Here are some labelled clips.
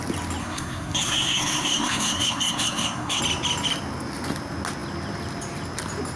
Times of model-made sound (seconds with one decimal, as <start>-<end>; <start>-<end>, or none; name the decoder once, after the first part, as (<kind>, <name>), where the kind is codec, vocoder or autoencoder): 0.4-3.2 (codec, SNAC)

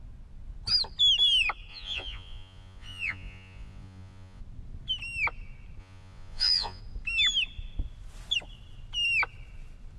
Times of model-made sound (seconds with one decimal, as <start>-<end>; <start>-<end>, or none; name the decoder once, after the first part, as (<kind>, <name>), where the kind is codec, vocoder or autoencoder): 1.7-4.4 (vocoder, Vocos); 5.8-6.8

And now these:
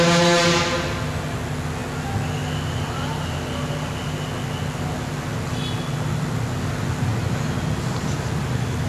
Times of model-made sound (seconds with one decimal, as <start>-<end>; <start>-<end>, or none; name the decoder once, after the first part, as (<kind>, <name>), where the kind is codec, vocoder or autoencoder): none